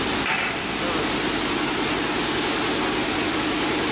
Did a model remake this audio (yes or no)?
no